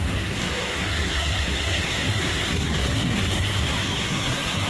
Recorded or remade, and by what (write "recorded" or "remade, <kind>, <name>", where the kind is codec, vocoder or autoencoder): remade, codec, SNAC